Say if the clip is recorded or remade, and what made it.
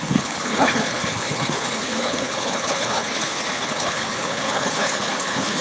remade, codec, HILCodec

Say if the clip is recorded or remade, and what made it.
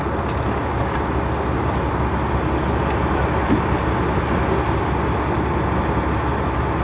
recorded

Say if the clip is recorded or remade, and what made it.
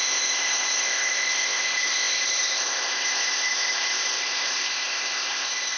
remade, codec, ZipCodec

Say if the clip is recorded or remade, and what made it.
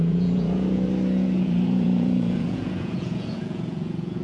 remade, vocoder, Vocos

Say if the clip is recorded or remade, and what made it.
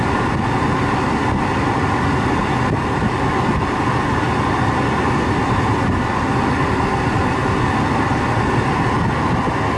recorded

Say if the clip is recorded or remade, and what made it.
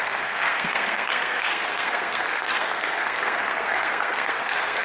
remade, codec, SNAC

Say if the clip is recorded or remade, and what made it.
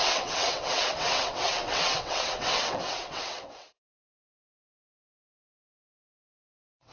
remade, vocoder, WaveNeXt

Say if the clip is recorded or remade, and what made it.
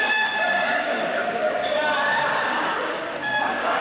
remade, codec, DAC